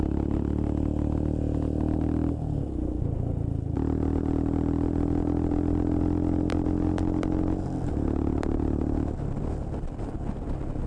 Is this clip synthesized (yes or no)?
no